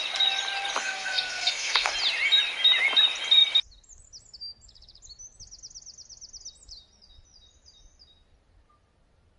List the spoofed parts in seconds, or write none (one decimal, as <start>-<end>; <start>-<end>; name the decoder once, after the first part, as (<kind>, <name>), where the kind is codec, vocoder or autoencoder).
0.8-1.9 (codec, SNAC)